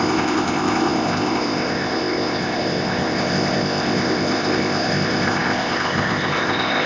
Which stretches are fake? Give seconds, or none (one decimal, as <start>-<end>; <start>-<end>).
0.0-6.9